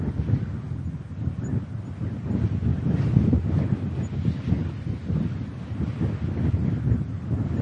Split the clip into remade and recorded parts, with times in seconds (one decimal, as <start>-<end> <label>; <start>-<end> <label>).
0.0-7.6 recorded